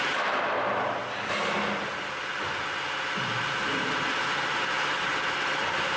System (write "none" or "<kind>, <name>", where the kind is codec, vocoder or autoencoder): none